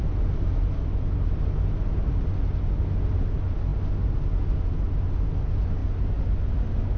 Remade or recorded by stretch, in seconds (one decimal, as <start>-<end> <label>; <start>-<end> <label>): 0.0-7.0 recorded